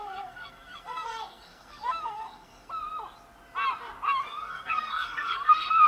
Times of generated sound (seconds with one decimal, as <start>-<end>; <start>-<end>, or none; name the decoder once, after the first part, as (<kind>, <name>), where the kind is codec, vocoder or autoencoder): 0.0-2.7 (codec, SNAC); 4.3-5.9